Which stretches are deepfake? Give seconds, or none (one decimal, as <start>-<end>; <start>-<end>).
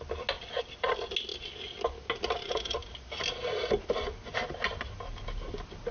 none